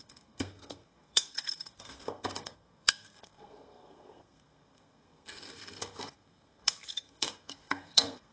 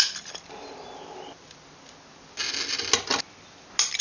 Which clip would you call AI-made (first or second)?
first